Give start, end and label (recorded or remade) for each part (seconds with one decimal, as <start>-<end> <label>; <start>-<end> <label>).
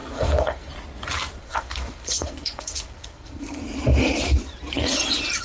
0.0-0.7 remade; 0.7-1.4 recorded; 1.4-3.6 remade; 3.6-5.4 recorded